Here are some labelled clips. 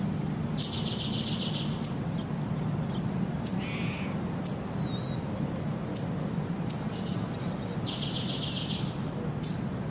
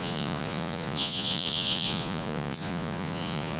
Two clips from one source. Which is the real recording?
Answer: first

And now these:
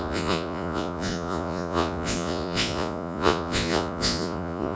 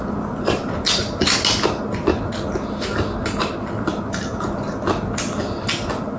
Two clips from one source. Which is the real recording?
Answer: second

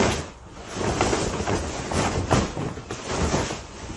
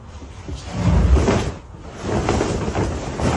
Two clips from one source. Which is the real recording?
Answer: second